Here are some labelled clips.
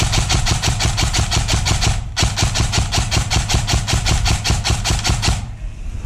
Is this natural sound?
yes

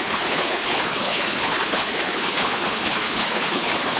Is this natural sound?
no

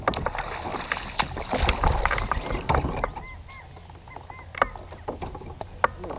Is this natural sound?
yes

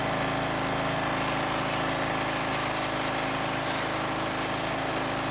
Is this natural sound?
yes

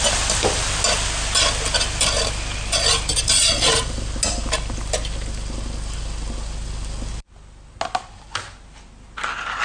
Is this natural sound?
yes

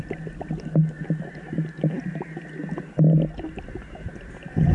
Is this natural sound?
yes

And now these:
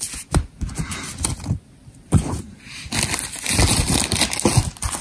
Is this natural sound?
yes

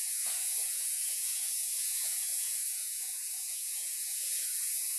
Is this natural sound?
no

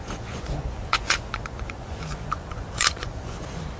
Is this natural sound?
no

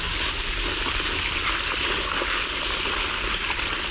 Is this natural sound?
yes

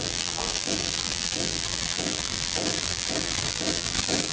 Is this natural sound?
no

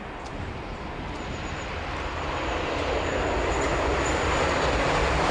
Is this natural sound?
yes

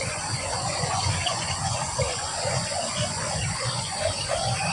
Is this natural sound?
no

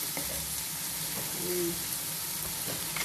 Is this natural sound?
yes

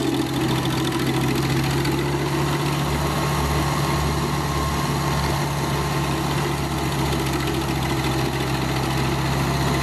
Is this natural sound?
yes